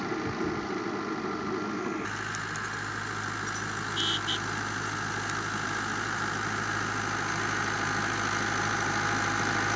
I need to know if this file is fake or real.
real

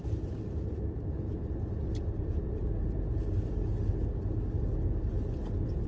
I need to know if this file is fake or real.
real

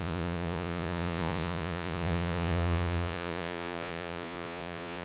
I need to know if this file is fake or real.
fake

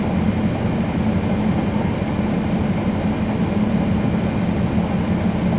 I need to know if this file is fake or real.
real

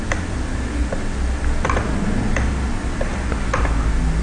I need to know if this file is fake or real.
real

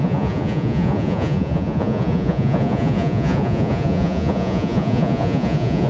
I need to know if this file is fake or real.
fake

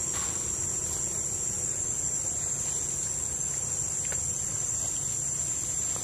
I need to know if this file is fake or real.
real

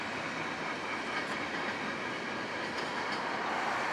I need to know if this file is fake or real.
real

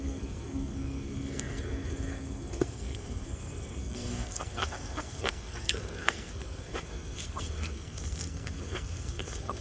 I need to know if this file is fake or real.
fake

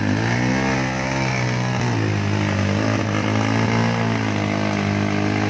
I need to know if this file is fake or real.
real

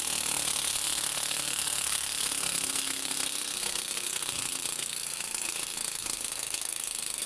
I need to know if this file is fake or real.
fake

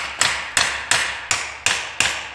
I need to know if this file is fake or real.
real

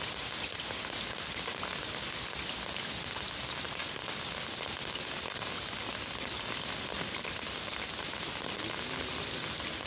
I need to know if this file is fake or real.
real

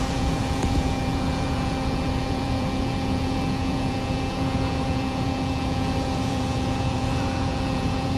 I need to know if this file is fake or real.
fake